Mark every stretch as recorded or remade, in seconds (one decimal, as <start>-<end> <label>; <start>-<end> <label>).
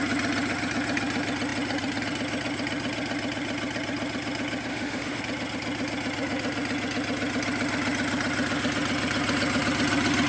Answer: 0.0-4.7 recorded; 4.7-5.2 remade; 5.2-10.3 recorded